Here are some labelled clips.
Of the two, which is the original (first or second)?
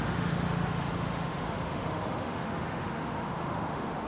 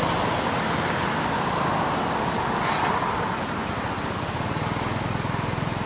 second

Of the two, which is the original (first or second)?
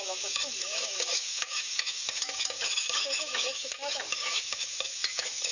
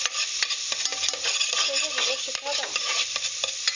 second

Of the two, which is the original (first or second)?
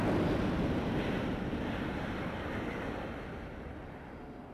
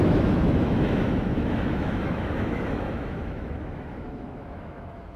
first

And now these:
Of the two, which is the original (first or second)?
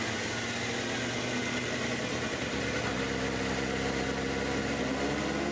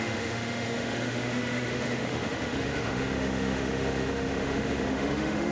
first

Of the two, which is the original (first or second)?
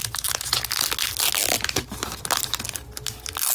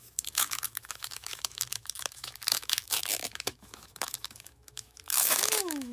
first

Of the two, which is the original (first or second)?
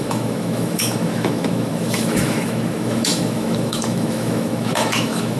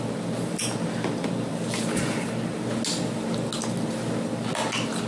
second